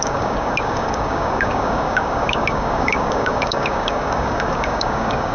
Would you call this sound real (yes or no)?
no